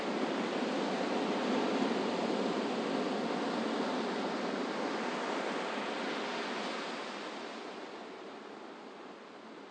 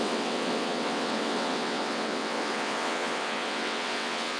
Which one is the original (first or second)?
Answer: first